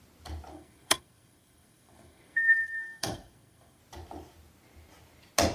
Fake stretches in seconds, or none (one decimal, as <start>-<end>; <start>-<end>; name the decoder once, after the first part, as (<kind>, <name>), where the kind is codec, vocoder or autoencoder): 0.5-3.8 (codec, SNAC)